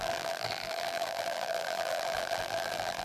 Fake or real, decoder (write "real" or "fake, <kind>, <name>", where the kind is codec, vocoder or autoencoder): fake, vocoder, BigVGAN v2